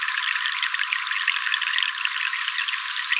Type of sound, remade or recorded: recorded